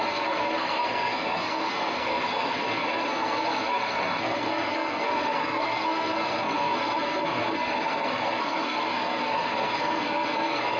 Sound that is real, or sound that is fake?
fake